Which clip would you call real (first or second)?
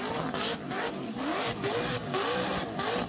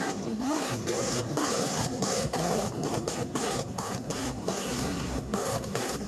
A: first